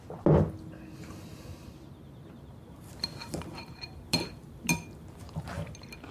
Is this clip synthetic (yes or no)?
no